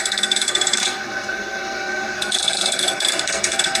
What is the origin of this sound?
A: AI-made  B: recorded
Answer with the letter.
A